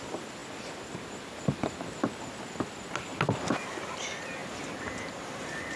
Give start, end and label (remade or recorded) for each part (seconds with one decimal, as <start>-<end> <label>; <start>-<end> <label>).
0.0-0.4 recorded; 0.4-2.0 remade; 2.0-3.1 recorded; 3.1-3.6 remade; 3.6-4.4 recorded; 4.4-5.8 remade